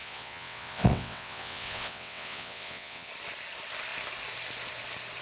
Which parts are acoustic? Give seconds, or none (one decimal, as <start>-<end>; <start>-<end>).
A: 3.1-5.2